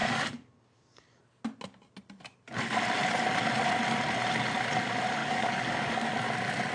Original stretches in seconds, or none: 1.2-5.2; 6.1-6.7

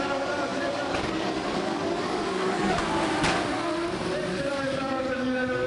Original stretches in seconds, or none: 2.8-4.3

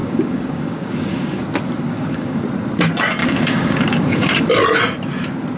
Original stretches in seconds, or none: 1.4-1.9; 2.4-3.2; 4.5-5.6

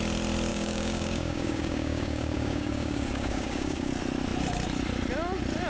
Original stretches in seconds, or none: 0.0-0.5; 3.9-5.7